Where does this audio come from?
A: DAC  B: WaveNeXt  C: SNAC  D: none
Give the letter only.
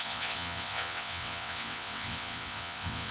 B